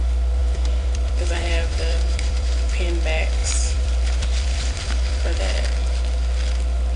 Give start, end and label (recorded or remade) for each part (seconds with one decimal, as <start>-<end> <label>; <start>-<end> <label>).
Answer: 0.0-0.4 recorded; 0.4-2.7 remade; 2.7-3.4 recorded; 3.4-5.4 remade; 5.4-7.0 recorded